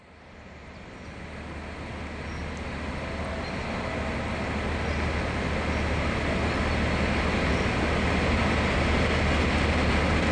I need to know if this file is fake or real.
real